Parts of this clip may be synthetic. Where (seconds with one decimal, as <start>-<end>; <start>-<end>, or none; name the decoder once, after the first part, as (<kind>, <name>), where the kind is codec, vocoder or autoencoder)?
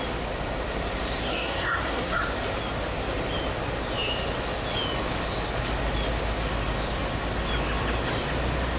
1.2-2.2 (codec, SNAC)